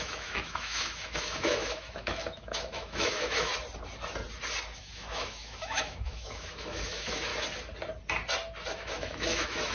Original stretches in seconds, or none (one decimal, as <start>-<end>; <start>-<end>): 3.5-4.8; 7.3-8.7